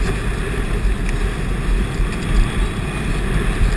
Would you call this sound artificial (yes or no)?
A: no